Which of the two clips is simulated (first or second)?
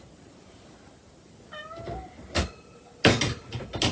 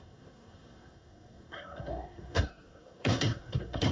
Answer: second